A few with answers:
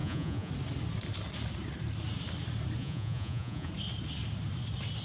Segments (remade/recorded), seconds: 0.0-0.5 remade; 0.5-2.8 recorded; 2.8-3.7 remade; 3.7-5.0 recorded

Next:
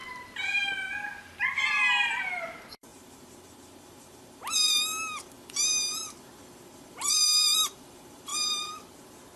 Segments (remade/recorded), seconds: 0.0-9.4 remade